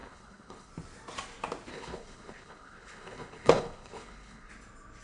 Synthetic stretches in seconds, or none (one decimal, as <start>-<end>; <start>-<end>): 0.0-0.7; 1.7-4.5

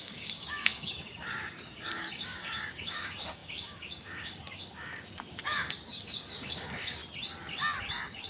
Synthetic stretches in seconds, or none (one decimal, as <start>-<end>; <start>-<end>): 0.0-7.0; 7.8-8.3

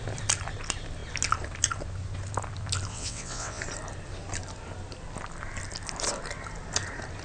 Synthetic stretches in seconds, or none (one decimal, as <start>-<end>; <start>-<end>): 2.9-3.6

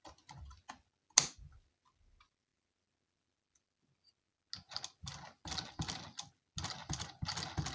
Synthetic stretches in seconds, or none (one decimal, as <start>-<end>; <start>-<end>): none

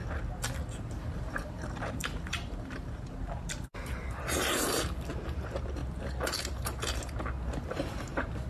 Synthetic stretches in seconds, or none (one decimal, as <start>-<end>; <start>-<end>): 1.1-5.8; 6.4-8.5

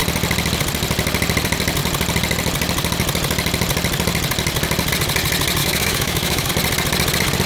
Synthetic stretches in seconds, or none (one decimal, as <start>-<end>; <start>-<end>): 5.6-6.5